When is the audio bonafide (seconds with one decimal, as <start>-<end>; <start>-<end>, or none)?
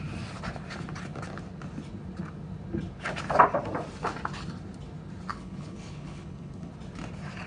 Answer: 0.0-5.3; 6.7-7.5